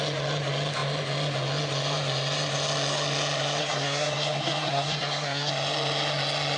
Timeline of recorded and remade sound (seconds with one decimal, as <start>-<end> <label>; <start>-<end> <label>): 0.0-3.6 recorded; 3.6-5.5 remade; 5.5-6.6 recorded